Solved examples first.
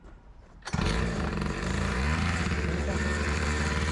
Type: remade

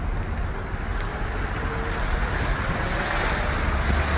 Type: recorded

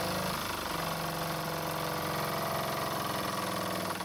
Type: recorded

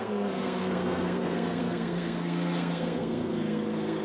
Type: remade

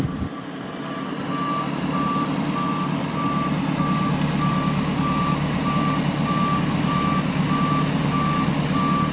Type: recorded